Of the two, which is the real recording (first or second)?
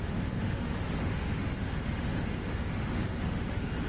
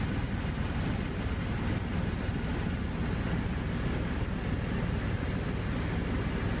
second